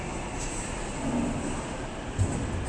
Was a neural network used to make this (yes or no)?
no